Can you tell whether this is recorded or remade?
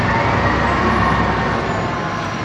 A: recorded